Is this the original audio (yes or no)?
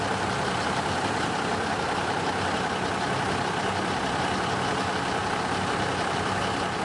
yes